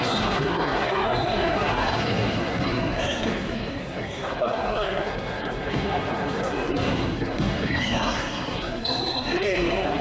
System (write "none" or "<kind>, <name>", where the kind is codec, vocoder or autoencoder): codec, SNAC